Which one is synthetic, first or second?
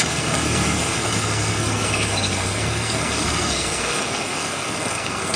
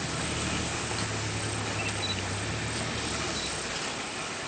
first